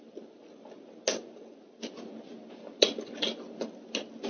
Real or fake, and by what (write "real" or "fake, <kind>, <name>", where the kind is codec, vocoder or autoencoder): real